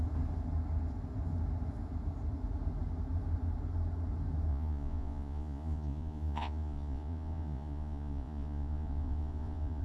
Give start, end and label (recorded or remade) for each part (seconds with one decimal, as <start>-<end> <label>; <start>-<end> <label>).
0.0-4.5 recorded; 4.5-9.8 remade